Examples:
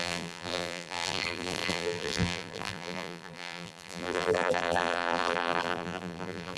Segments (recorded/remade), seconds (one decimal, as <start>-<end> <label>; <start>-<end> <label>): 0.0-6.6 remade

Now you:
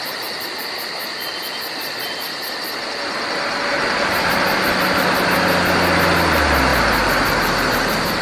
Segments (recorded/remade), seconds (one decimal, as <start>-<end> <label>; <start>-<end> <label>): 0.0-8.2 recorded

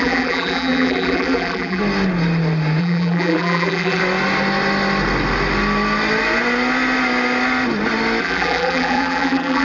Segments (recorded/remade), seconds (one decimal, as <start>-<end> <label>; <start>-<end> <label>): 0.0-1.8 remade; 1.8-2.8 recorded; 2.8-4.0 remade; 4.0-8.2 recorded; 8.2-9.6 remade

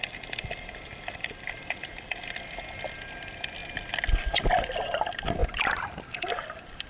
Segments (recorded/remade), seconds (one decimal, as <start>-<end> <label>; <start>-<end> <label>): 0.0-3.6 remade; 3.6-4.1 recorded; 4.1-5.4 remade; 5.4-6.1 recorded; 6.1-6.9 remade